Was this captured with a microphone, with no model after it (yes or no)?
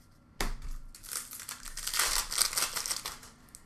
yes